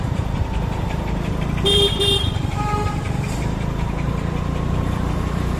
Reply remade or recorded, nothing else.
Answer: remade